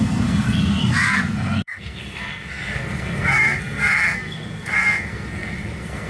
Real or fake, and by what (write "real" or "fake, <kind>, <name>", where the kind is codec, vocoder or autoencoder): fake, codec, SNAC